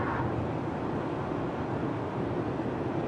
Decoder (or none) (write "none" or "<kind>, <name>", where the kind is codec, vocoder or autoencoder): none